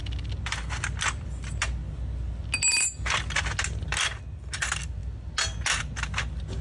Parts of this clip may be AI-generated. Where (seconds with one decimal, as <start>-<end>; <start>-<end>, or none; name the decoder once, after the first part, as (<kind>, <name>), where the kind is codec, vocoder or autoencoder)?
none